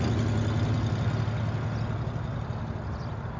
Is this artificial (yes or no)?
no